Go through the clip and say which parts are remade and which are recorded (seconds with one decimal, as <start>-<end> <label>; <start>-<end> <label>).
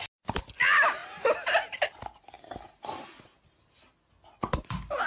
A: 0.0-5.1 recorded